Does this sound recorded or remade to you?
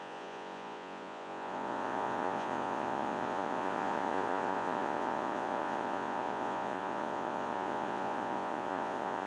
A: remade